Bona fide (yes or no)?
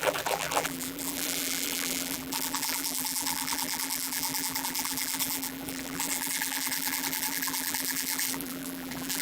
no